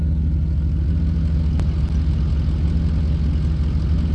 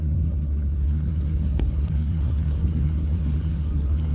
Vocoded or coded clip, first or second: second